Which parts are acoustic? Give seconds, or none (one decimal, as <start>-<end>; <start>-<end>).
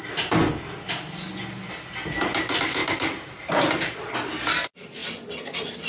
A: 0.0-5.9